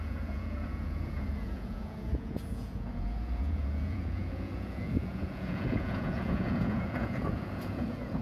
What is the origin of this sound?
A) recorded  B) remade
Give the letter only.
B